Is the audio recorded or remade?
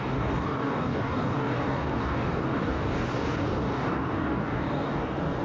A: remade